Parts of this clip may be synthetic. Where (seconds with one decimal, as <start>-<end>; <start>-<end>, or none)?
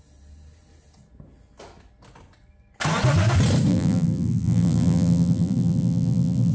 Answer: 3.7-6.5